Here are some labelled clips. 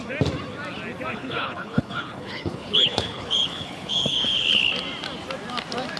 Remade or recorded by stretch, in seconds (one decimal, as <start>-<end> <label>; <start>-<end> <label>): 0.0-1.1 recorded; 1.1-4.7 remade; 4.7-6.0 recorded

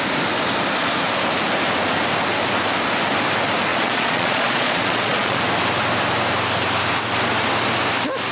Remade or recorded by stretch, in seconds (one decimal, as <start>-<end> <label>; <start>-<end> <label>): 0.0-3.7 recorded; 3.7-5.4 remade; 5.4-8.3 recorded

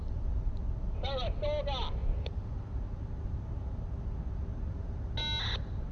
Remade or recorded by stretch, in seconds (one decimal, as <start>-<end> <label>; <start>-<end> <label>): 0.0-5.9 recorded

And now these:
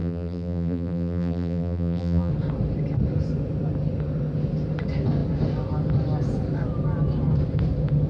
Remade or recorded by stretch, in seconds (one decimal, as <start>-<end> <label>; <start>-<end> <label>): 0.0-2.3 remade; 2.3-8.1 recorded